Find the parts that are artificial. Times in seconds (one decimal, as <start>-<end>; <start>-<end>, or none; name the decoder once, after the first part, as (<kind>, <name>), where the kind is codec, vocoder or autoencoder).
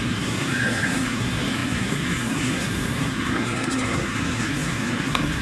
0.0-5.4 (codec, SNAC)